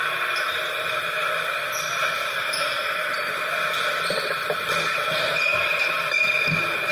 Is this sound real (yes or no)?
no